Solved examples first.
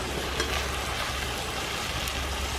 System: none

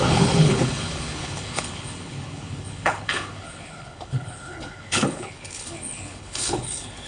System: codec, HILCodec